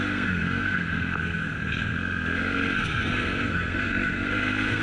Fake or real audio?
fake